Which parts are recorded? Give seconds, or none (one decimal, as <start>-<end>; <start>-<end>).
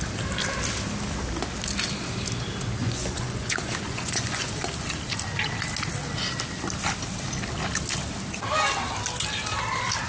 0.0-2.8; 4.5-10.1